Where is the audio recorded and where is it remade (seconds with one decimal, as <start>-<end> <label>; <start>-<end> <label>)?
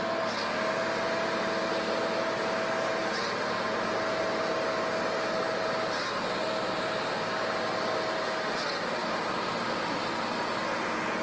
0.0-9.0 recorded; 9.0-10.1 remade; 10.1-11.2 recorded